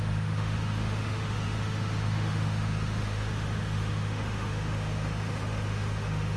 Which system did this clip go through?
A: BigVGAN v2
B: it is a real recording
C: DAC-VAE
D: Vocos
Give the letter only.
C